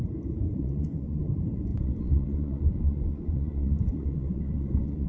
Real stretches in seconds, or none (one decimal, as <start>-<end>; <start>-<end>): 0.0-0.5; 1.2-1.7